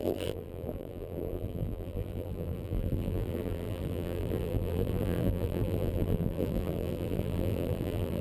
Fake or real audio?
fake